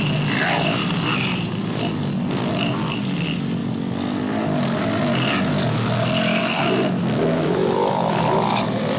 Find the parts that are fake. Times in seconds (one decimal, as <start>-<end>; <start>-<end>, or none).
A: 7.3-8.2